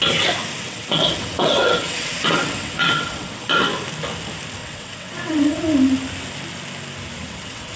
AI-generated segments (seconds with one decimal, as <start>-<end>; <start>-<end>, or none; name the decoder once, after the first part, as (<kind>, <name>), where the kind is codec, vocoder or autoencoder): 0.6-3.6 (vocoder, WaveNeXt); 4.6-5.6; 7.2-7.8